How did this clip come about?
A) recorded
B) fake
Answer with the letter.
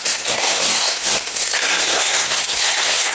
B